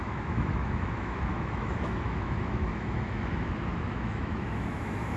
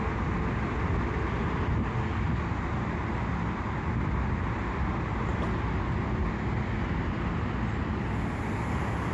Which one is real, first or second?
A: second